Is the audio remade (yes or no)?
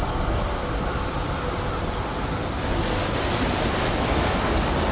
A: no